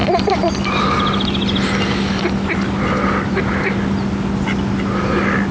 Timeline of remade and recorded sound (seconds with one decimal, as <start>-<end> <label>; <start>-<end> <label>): 0.0-5.5 recorded